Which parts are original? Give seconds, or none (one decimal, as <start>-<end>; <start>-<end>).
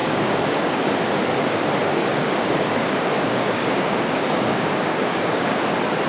0.9-1.9; 5.6-6.1